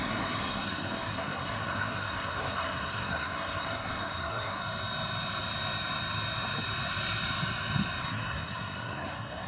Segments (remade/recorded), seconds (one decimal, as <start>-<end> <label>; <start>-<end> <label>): 0.0-4.6 remade; 4.6-8.0 recorded; 8.0-9.5 remade